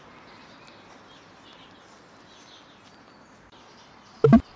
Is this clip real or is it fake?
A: real